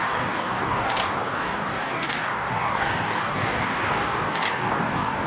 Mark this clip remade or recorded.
remade